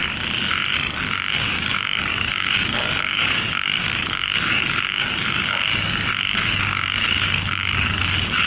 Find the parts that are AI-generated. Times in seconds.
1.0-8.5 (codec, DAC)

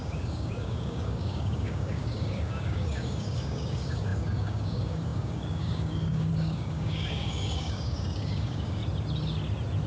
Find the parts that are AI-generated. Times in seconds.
0.0-8.8 (codec, DAC)

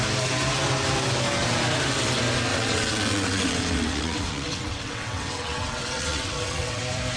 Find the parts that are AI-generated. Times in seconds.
2.5-6.8 (vocoder, WaveNeXt)

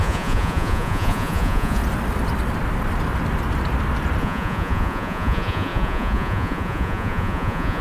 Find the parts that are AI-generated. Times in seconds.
0.0-1.8 (vocoder, Vocos); 4.2-7.8